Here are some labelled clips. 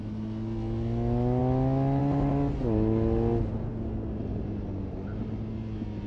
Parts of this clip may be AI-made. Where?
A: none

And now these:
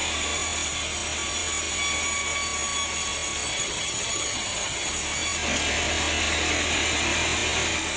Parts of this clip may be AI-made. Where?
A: 3.5-4.9 (vocoder, HiFi-GAN)

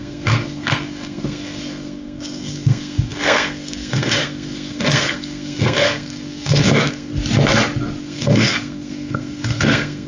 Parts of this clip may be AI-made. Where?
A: 0.0-7.1 (codec, SNAC); 8.0-10.1